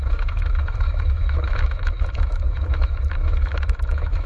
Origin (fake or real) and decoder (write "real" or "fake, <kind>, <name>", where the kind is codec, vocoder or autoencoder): fake, autoencoder, DAC-VAE